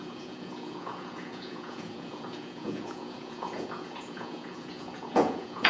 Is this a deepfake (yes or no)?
yes